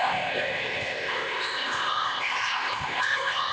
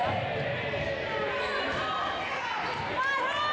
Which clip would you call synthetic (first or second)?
first